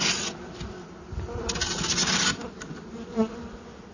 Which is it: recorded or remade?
recorded